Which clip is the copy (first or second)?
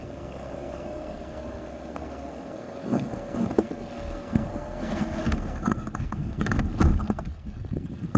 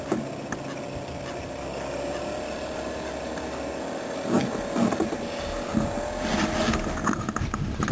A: first